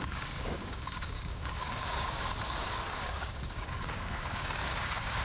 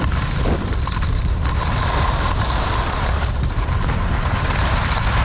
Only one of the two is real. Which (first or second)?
second